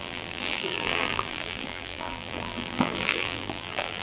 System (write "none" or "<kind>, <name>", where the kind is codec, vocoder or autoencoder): vocoder, BigVGAN v2